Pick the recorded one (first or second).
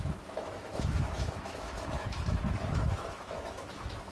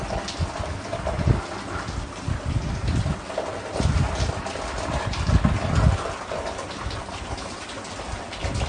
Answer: second